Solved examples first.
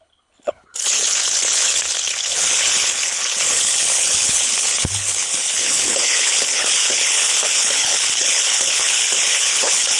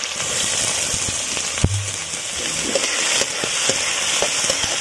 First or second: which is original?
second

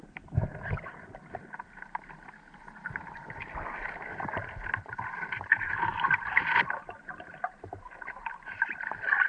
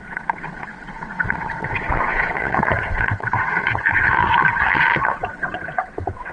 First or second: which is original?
first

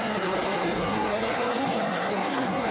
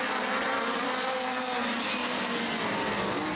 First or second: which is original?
second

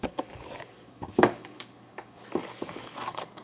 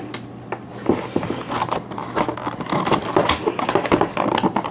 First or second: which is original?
second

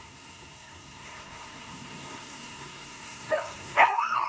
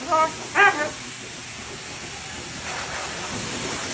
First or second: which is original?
second